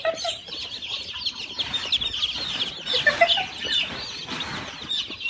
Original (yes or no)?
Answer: yes